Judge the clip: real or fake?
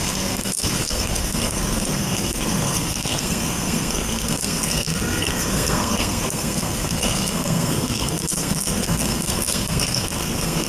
fake